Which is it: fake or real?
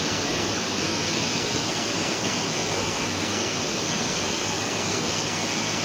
fake